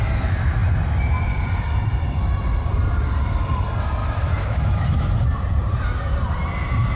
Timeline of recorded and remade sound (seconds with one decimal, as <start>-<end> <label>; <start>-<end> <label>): 0.0-4.0 recorded; 4.0-5.2 remade; 5.2-7.0 recorded